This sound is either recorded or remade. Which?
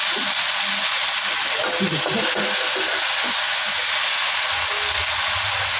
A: recorded